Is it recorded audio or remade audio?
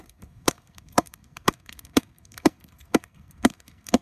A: remade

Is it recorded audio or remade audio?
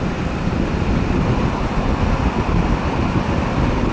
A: recorded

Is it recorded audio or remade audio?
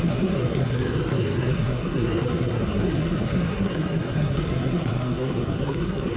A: remade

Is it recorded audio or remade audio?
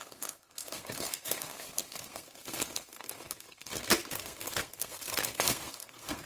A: remade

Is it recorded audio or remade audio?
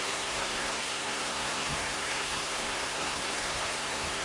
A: remade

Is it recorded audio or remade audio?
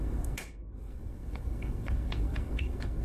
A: remade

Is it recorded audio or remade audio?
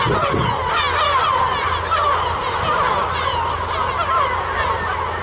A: recorded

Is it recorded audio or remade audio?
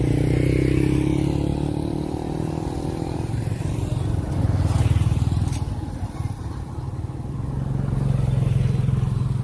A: recorded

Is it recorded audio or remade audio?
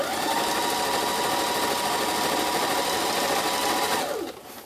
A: recorded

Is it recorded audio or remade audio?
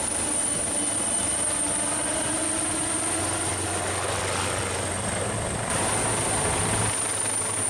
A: recorded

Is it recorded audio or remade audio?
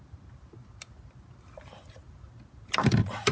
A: recorded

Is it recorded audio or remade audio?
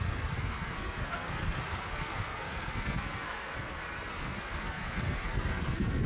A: remade